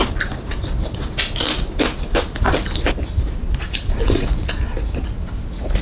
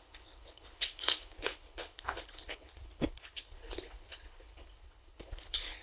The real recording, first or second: first